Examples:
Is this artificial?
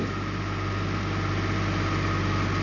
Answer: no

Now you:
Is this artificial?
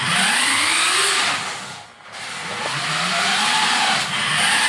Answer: no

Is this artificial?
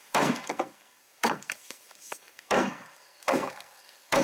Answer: yes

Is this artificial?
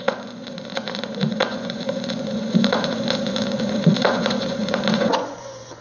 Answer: yes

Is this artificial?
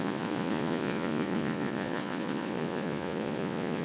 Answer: yes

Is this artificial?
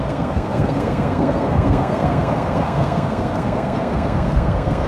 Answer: yes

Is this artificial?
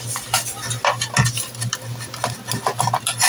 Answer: no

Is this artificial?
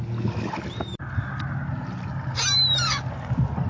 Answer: no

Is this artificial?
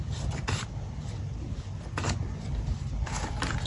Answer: yes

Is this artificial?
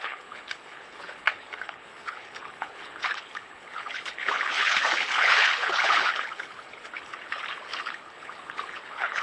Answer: yes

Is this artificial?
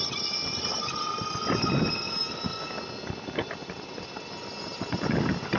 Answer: no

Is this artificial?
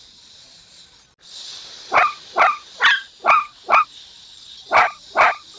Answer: no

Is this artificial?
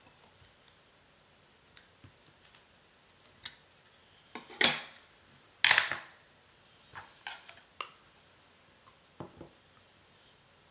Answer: no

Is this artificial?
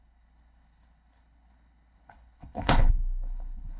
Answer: yes